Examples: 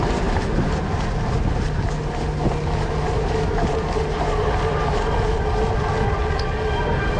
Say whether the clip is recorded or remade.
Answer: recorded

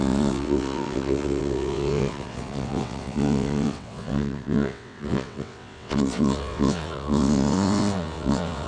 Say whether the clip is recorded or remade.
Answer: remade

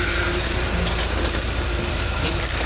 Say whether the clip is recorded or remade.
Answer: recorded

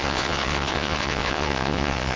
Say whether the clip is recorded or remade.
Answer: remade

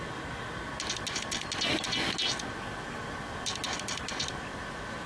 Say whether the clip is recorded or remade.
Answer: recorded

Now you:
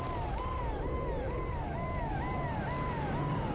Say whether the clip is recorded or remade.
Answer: recorded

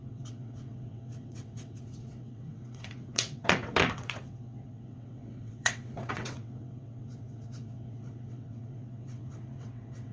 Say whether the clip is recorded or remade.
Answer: remade